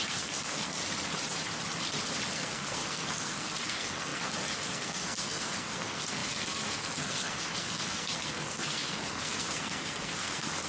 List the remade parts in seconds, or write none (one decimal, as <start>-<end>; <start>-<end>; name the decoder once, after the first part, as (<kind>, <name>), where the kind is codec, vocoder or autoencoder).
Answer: 0.0-0.8 (codec, SNAC); 2.3-10.7